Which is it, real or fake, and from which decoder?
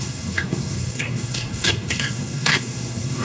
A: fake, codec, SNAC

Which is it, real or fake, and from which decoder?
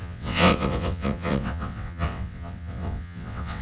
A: fake, vocoder, WaveNeXt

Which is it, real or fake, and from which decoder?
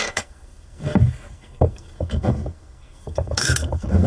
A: fake, codec, SNAC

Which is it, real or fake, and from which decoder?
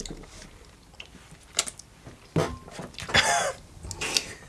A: real